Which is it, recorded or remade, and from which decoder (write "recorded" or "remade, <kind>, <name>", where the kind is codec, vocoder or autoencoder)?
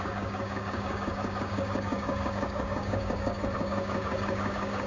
remade, codec, DAC